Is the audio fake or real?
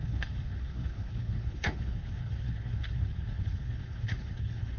fake